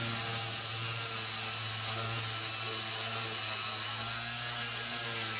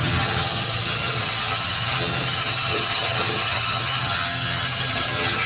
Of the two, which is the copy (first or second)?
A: second